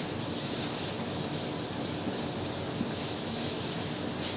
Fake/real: real